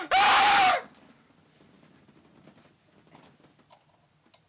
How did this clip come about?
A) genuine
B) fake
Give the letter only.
A